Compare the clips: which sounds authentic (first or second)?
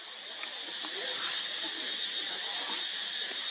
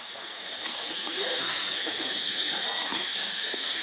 first